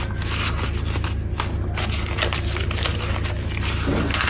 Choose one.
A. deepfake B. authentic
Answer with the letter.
B